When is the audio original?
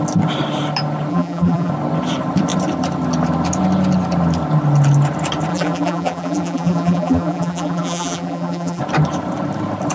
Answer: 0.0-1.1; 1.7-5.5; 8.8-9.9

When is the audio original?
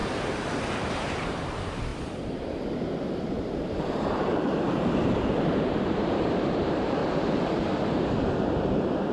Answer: 0.0-0.6; 1.9-3.2; 7.0-7.9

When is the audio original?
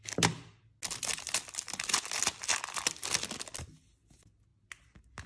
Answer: 0.0-5.3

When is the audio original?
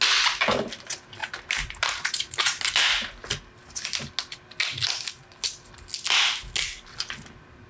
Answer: 0.0-1.2; 2.6-7.7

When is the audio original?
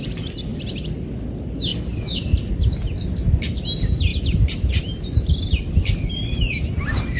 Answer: 0.0-0.5; 1.1-4.1; 6.7-7.2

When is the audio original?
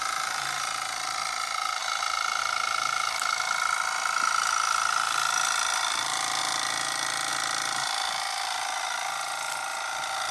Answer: 1.8-2.4; 6.4-7.3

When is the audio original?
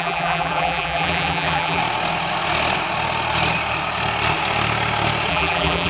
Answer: 1.8-5.3